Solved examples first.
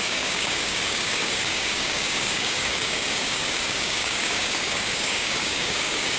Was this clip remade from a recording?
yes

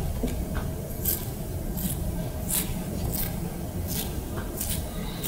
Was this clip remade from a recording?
no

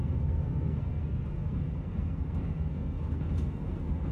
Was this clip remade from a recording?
yes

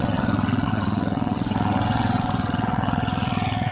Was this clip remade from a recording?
yes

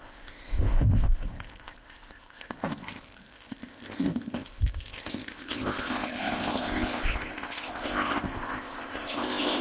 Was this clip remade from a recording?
yes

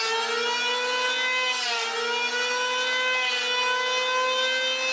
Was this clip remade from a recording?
no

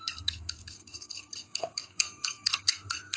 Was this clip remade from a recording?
yes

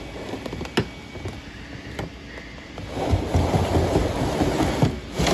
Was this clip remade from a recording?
no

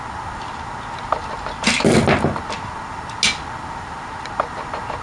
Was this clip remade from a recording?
no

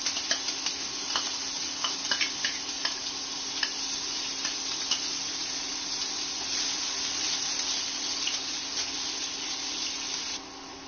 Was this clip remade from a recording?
no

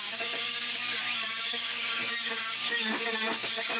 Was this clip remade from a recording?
yes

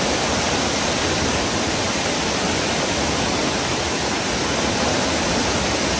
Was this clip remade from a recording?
no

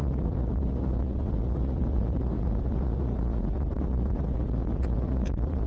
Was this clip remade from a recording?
yes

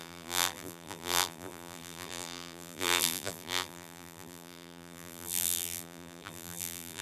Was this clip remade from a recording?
yes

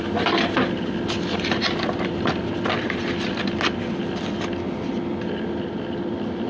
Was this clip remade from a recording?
no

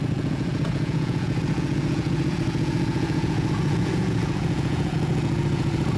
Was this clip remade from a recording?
yes